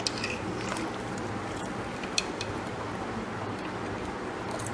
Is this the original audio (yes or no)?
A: yes